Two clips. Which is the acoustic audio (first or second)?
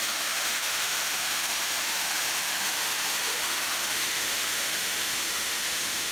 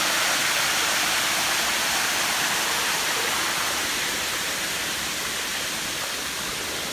second